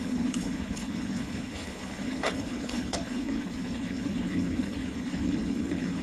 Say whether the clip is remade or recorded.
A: remade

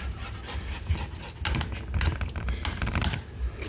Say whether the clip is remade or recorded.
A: recorded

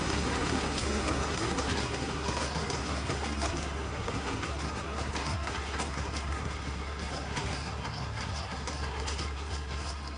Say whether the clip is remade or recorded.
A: remade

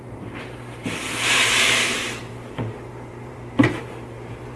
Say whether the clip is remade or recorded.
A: remade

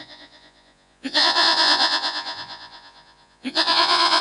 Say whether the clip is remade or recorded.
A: remade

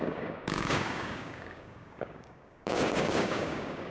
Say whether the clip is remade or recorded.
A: remade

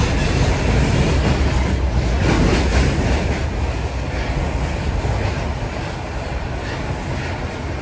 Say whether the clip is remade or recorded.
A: recorded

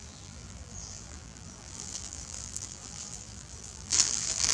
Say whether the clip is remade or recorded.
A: remade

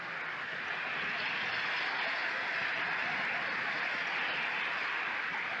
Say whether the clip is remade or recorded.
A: recorded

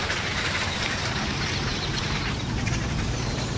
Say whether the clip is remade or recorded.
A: remade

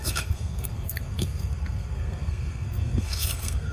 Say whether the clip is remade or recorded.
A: remade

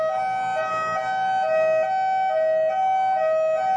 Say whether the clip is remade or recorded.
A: recorded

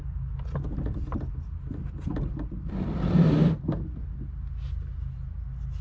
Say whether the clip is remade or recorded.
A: recorded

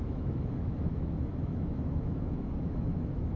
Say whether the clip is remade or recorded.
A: remade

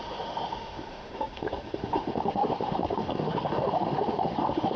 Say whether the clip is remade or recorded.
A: remade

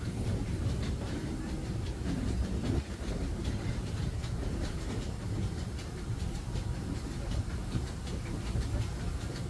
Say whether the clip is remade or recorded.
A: remade